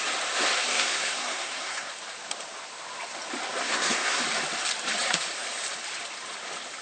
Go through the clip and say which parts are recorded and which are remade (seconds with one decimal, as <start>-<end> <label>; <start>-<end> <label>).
0.0-0.7 recorded; 0.7-1.9 remade; 1.9-3.6 recorded; 3.6-4.2 remade; 4.2-6.8 recorded